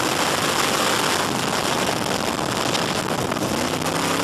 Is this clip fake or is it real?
real